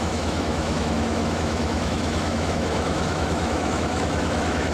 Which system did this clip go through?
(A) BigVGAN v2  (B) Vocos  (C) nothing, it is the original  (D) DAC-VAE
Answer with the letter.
D